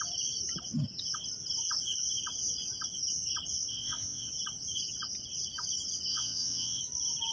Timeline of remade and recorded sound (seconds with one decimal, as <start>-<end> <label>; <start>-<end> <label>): 0.0-3.7 recorded; 3.7-4.3 remade; 4.3-6.1 recorded; 6.1-6.8 remade; 6.8-7.3 recorded